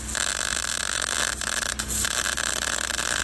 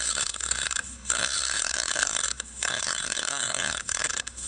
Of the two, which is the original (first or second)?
first